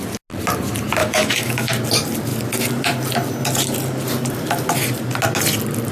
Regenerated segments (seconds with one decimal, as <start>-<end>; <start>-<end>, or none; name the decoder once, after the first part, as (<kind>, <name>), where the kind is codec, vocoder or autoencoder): 1.0-1.7 (autoencoder, DAC-VAE)